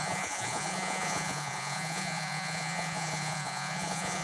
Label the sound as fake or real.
fake